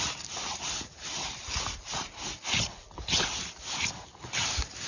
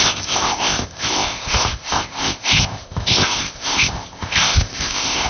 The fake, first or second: second